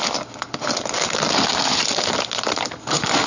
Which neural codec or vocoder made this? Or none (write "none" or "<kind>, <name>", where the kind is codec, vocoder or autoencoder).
none